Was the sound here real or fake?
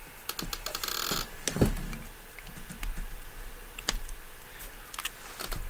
real